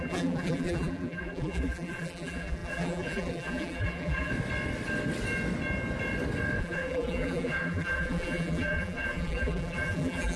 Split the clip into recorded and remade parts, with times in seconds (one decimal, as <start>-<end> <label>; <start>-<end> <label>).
0.0-4.3 remade; 4.3-6.6 recorded; 6.6-10.4 remade